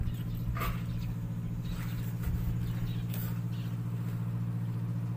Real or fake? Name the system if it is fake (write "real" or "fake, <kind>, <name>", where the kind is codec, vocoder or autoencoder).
real